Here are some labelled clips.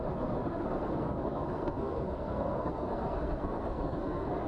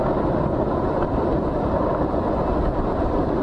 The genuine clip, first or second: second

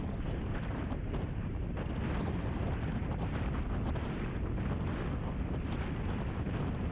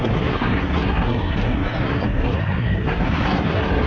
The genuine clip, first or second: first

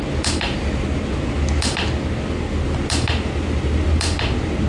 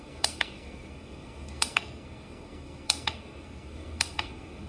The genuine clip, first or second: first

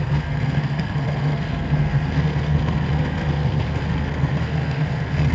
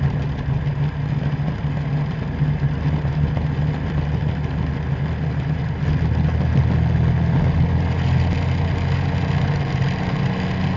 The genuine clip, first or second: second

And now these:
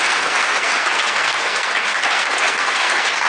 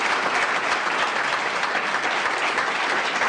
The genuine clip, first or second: second